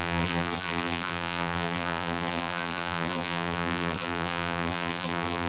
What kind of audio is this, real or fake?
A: fake